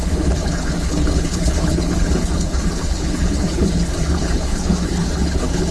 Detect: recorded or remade remade